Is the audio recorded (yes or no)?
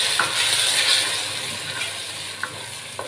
yes